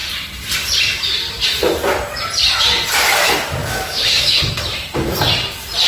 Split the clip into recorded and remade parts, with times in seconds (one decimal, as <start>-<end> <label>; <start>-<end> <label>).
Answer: 0.0-3.6 recorded; 3.6-4.5 remade; 4.5-5.9 recorded